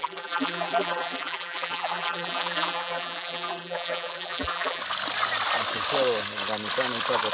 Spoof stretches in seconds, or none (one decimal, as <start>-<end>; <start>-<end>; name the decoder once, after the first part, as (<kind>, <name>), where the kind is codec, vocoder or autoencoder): 0.0-4.8 (vocoder, BigVGAN v2)